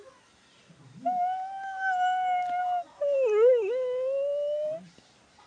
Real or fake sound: real